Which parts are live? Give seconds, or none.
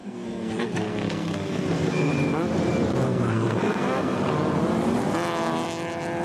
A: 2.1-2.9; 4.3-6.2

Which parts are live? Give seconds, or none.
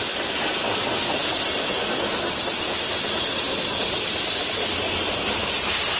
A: 0.0-6.0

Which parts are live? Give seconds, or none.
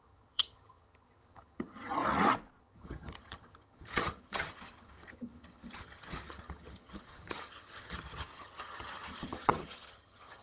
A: 2.0-2.6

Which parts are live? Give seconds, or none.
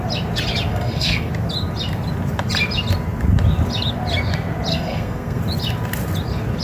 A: 0.0-0.7; 1.3-4.7; 5.4-6.6